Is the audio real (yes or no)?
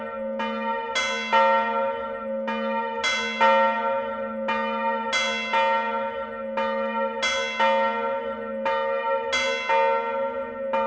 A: yes